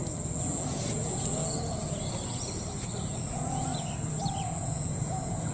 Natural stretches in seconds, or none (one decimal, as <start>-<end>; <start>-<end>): 0.0-0.7; 1.4-3.0; 3.7-4.6